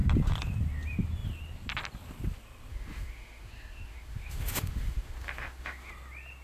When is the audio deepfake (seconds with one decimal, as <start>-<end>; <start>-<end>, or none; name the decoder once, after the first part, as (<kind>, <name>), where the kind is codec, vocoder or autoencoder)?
2.7-5.9 (autoencoder, DAC-VAE)